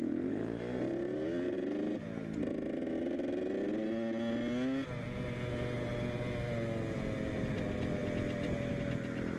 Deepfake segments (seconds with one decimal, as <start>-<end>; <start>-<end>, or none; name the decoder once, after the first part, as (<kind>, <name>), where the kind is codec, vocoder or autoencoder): none